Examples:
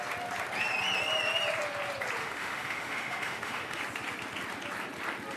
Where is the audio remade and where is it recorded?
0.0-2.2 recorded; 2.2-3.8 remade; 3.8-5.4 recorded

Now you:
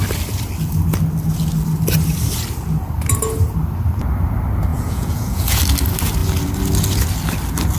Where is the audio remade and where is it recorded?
0.0-4.7 recorded; 4.7-5.6 remade; 5.6-7.8 recorded

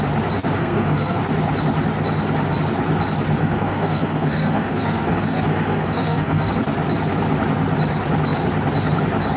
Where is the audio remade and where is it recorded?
0.0-0.6 recorded; 0.6-1.2 remade; 1.2-3.4 recorded; 3.4-6.5 remade; 6.5-9.4 recorded